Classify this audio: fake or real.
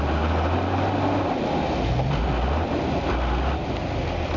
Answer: real